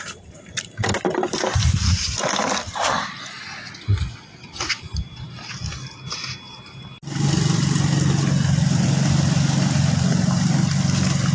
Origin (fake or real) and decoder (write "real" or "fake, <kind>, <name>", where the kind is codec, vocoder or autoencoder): real